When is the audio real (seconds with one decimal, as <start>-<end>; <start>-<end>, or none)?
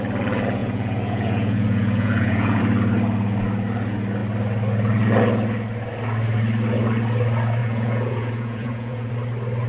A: 0.0-0.6; 2.6-7.6; 9.1-9.7